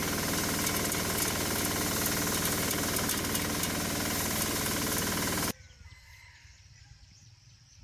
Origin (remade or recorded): recorded